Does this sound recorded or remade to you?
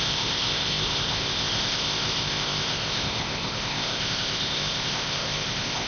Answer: remade